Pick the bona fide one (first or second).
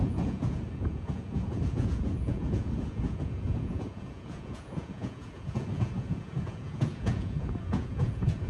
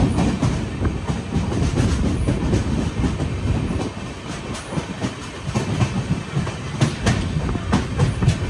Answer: second